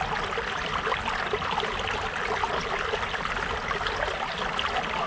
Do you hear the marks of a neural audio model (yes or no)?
no